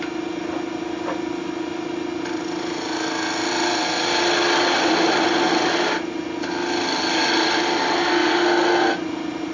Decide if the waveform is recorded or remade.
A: recorded